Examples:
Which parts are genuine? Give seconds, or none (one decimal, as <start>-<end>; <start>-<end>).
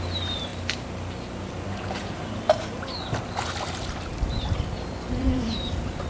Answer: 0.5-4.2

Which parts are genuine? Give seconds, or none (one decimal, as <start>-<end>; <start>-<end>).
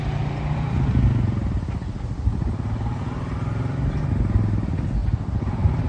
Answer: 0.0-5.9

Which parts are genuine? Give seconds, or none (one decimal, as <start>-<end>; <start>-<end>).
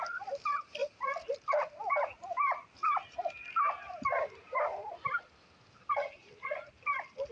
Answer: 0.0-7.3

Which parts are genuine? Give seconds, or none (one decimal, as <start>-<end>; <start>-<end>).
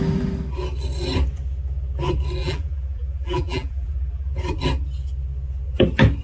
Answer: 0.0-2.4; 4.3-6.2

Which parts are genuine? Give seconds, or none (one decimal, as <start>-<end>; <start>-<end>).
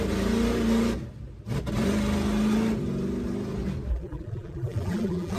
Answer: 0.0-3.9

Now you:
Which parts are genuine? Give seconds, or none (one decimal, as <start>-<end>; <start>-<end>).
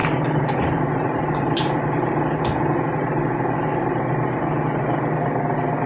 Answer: 2.4-5.9